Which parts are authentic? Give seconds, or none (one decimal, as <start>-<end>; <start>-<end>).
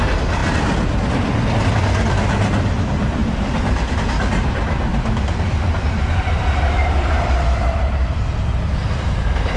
0.0-3.2; 3.9-4.9